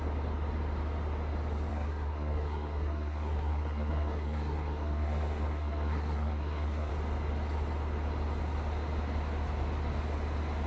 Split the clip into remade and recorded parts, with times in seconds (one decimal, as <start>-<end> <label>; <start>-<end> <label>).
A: 0.0-1.7 recorded; 1.7-6.9 remade; 6.9-10.7 recorded